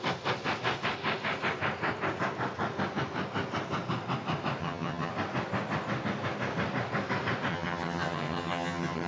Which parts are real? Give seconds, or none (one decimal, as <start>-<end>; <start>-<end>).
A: 0.0-4.6; 5.1-7.5